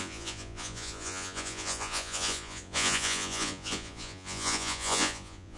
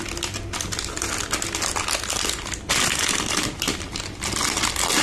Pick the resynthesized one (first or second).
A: first